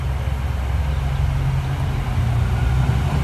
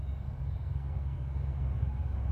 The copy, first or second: second